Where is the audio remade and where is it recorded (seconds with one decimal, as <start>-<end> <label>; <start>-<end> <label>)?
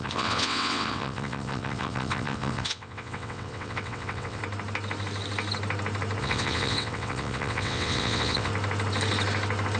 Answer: 0.0-4.4 remade; 4.4-6.2 recorded; 6.2-8.5 remade; 8.5-9.8 recorded